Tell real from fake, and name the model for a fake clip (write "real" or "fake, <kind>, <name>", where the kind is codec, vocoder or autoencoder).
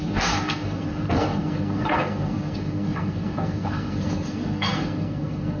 fake, codec, SNAC